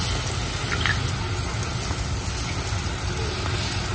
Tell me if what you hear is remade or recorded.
recorded